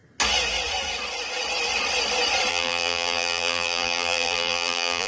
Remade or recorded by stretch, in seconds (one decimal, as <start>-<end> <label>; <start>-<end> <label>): 0.0-2.5 recorded; 2.5-5.1 remade